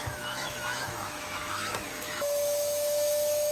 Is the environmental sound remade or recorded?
remade